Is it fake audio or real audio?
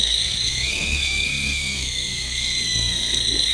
fake